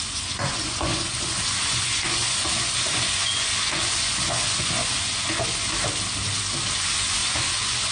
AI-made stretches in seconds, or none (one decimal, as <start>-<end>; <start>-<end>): 0.0-5.7; 6.8-7.9